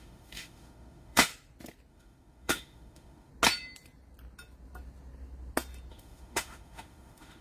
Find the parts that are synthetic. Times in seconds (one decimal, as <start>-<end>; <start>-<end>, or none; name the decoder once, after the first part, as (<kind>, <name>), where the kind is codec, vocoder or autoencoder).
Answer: 0.0-1.3 (autoencoder, DAC-VAE); 1.9-3.3; 5.9-7.4